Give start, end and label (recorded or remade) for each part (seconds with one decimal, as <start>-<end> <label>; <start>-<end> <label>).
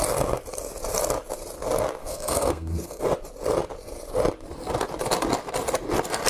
0.0-2.0 recorded; 2.0-3.0 remade; 3.0-6.3 recorded